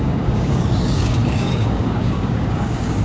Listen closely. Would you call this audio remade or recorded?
remade